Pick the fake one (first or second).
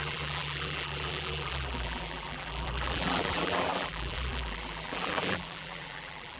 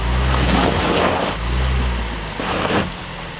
first